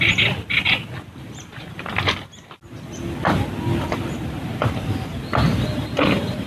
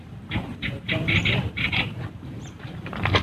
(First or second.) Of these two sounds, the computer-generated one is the second